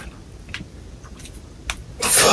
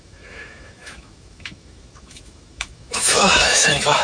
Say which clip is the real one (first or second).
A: first